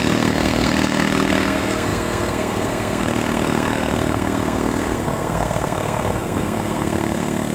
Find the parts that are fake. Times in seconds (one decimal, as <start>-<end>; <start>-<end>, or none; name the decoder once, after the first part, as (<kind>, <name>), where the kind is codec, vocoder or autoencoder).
0.0-7.5 (codec, SNAC)